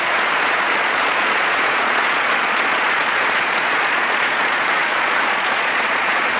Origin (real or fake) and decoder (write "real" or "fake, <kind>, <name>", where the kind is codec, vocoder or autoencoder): fake, vocoder, Vocos